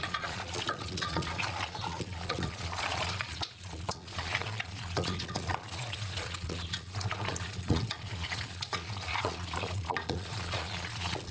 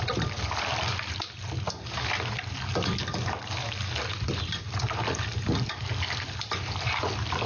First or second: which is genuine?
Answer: second